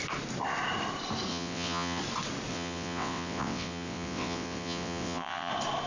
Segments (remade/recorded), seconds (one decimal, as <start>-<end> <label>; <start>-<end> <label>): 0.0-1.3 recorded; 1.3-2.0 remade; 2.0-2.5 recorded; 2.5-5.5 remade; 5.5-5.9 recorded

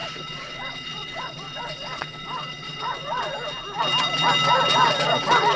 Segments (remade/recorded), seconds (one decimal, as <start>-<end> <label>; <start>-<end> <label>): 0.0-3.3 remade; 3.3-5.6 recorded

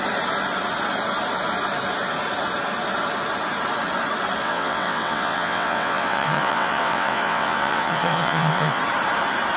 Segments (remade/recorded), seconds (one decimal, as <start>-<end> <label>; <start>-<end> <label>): 0.0-4.4 recorded; 4.4-8.8 remade; 8.8-9.6 recorded